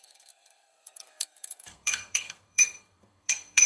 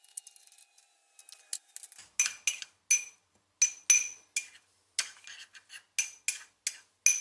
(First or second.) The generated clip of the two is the first